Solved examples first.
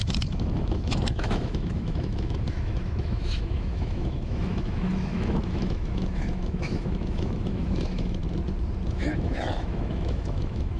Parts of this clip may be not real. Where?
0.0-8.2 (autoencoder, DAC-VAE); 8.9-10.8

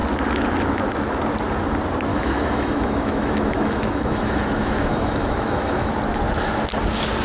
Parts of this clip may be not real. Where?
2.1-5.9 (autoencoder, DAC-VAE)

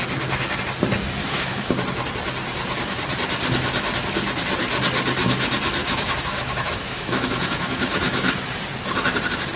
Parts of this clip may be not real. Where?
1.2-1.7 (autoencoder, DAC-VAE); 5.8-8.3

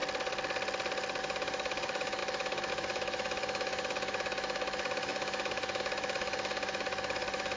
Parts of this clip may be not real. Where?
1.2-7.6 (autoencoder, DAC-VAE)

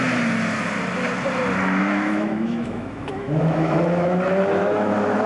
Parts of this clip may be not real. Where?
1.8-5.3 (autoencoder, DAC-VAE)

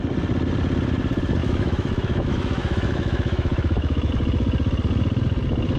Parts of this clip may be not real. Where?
1.4-4.1 (autoencoder, DAC-VAE)

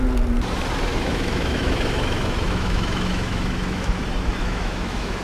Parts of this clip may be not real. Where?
0.9-4.0 (autoencoder, DAC-VAE); 4.4-5.2

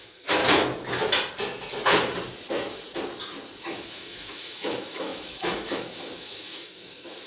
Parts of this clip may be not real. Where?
0.0-0.4 (autoencoder, DAC-VAE); 3.6-7.3